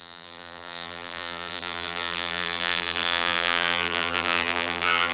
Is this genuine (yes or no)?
no